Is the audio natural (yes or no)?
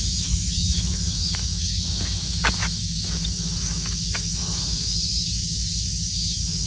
no